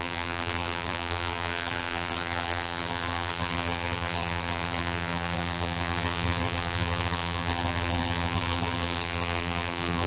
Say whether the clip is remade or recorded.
remade